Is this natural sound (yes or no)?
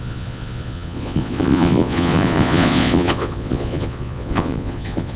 no